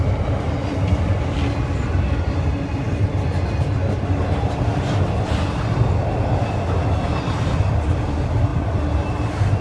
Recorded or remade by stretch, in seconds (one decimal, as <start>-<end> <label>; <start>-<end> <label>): 0.0-9.6 recorded